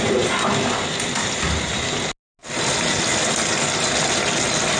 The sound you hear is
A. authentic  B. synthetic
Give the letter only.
A